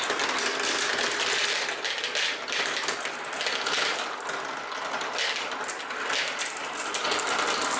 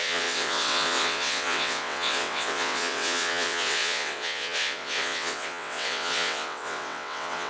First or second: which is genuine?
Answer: first